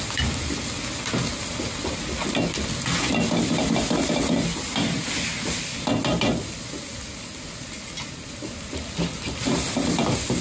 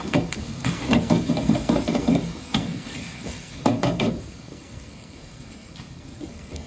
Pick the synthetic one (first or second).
second